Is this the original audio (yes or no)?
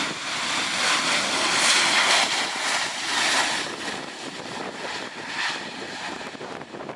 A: yes